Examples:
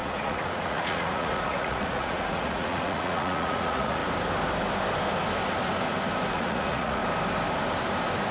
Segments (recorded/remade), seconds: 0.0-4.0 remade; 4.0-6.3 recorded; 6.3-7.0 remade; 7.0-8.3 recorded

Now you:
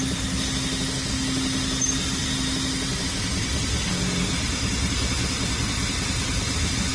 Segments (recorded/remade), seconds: 0.0-6.9 recorded

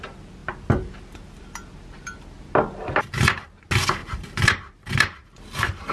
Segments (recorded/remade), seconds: 0.0-5.9 recorded